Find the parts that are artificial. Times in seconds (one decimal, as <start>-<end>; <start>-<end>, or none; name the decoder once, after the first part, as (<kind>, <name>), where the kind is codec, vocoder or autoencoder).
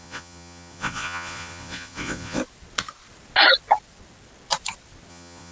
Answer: 0.0-2.4 (vocoder, Vocos); 5.1-5.5